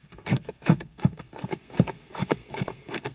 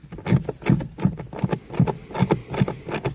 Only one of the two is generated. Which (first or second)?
first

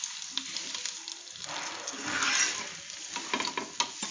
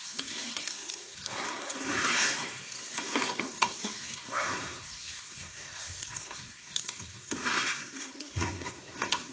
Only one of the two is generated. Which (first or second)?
second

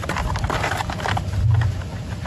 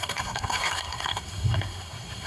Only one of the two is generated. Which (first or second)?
second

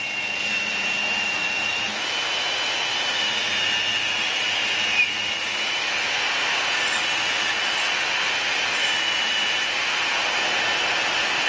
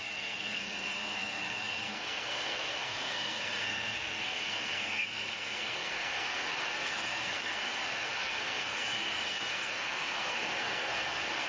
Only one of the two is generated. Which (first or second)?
second